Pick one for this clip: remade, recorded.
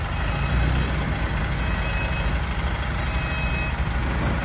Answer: recorded